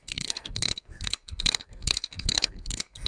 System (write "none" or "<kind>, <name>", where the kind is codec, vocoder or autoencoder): codec, SNAC